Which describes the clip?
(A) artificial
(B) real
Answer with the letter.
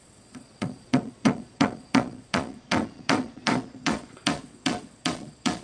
A